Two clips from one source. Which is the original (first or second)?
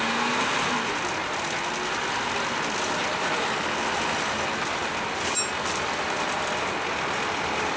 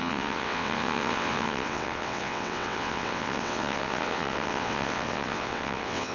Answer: first